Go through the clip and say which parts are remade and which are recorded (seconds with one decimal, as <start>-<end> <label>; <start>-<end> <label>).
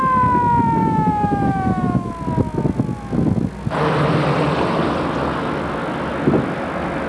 0.0-0.8 recorded; 0.8-2.1 remade; 2.1-7.1 recorded